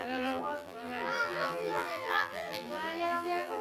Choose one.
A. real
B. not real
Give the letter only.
B